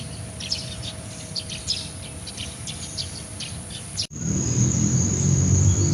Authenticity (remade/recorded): remade